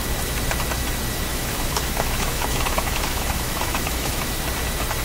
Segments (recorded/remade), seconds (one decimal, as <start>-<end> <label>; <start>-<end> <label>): 0.0-1.3 recorded; 1.3-4.3 remade; 4.3-5.0 recorded